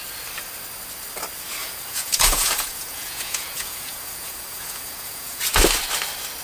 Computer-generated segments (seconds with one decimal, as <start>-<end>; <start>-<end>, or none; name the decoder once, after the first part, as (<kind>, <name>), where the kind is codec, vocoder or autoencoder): 1.6-5.4 (vocoder, Vocos)